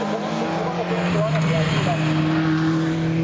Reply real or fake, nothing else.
real